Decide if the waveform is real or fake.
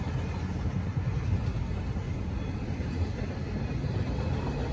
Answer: real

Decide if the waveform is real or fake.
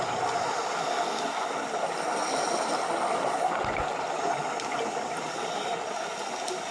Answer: real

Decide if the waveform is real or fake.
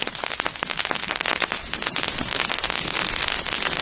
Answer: real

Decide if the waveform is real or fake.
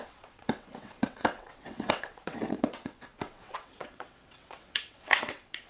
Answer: fake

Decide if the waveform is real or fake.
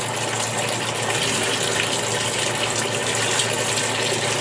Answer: real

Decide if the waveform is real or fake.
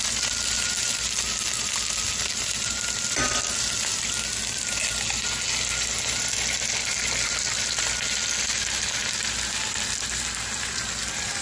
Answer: real